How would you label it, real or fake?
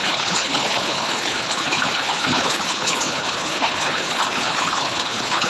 fake